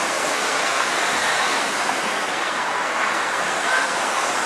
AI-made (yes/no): yes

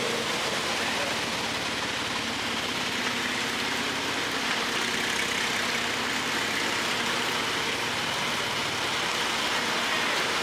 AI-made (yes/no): no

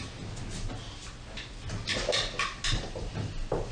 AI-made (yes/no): no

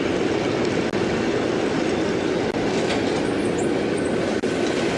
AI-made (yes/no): no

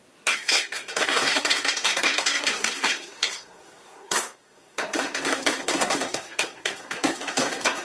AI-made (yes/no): yes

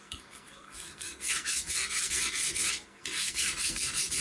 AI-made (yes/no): yes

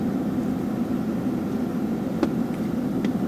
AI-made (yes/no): no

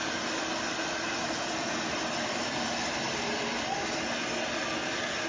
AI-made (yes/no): no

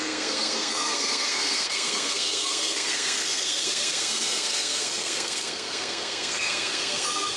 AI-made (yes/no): yes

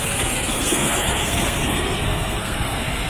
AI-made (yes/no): yes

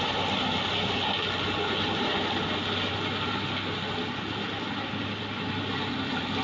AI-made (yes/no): no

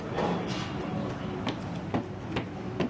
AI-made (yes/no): no